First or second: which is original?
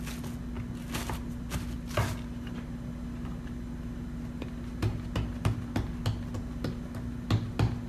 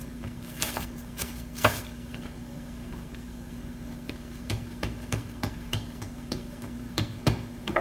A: first